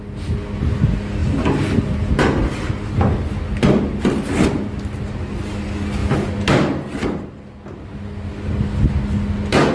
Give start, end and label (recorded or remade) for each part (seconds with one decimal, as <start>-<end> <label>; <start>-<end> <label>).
0.0-9.7 recorded